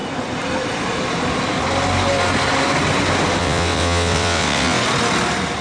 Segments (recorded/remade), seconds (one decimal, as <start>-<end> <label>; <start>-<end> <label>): 0.0-3.4 recorded; 3.4-4.8 remade; 4.8-5.6 recorded